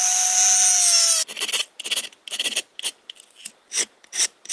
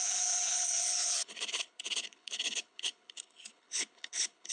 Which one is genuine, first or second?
first